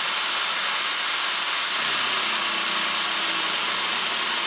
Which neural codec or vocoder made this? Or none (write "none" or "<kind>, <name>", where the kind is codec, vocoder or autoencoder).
none